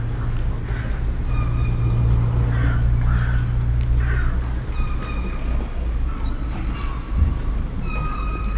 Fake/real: real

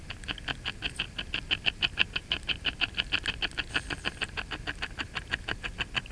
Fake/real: real